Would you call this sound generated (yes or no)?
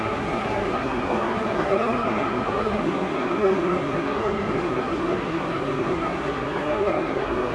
yes